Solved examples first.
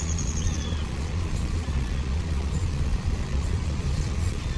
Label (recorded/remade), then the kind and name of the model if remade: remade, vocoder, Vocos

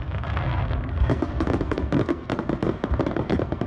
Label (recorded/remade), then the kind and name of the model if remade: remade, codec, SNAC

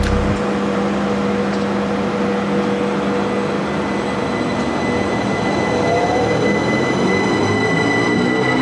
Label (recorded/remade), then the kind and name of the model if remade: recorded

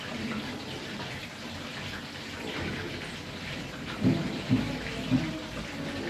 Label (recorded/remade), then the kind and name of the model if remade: recorded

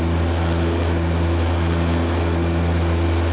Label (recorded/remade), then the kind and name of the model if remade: recorded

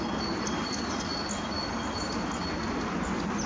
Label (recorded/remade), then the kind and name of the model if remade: recorded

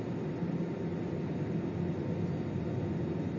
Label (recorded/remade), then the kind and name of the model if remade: recorded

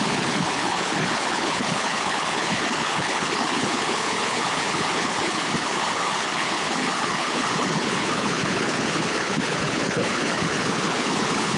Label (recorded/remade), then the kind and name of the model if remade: remade, codec, HILCodec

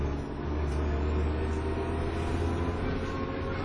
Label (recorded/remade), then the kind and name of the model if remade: recorded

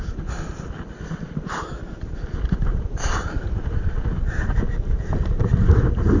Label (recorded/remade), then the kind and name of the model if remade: recorded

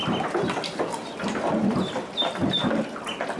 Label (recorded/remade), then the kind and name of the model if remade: recorded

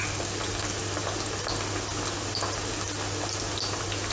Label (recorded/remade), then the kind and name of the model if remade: recorded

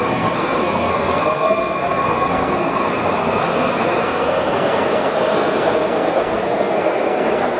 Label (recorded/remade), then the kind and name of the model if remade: remade, codec, SNAC